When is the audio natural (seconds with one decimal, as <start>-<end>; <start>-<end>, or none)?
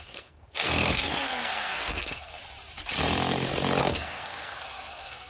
2.4-3.8